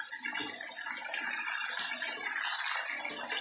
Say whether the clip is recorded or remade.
recorded